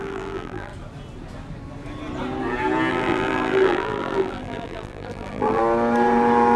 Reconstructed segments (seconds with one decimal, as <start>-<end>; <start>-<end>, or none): 0.0-0.7; 2.9-5.6